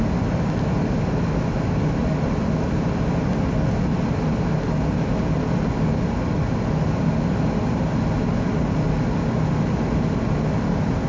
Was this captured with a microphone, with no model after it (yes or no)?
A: yes